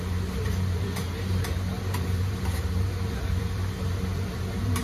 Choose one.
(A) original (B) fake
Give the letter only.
B